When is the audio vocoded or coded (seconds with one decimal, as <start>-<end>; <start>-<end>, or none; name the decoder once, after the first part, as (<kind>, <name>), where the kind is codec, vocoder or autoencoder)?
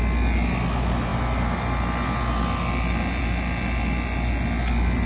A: none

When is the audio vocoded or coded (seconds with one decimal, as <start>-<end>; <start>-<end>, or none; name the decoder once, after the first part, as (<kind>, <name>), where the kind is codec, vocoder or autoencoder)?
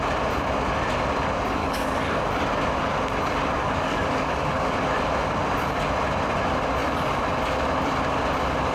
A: 1.6-2.2 (codec, DAC); 3.6-4.7